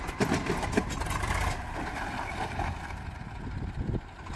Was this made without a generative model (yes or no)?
yes